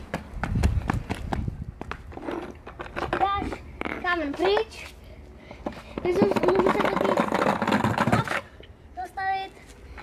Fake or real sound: real